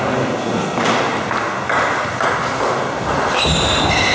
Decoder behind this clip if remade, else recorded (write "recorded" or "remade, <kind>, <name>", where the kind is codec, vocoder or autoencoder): recorded